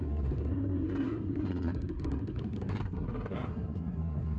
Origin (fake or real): fake